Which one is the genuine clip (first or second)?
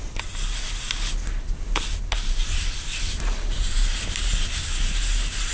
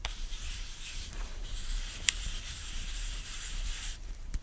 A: first